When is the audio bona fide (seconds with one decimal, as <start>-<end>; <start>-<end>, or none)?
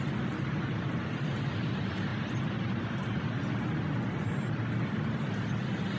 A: 0.0-6.0